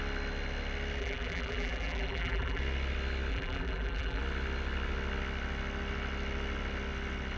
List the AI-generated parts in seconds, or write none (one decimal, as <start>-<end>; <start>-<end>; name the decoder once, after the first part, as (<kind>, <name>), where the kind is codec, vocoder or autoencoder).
1.0-2.6 (vocoder, BigVGAN v2); 3.3-4.2